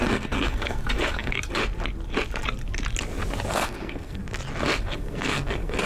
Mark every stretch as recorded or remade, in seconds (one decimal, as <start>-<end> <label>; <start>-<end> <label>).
0.0-1.6 remade; 1.6-3.5 recorded; 3.5-4.2 remade; 4.2-4.8 recorded; 4.8-5.9 remade